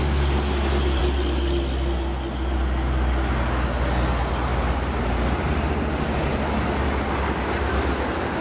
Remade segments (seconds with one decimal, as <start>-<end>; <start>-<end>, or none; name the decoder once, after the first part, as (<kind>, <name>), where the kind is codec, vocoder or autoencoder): 4.5-5.4 (vocoder, BigVGAN v2)